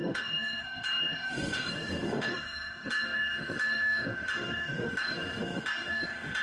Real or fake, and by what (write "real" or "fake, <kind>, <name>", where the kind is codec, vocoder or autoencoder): fake, autoencoder, DAC-VAE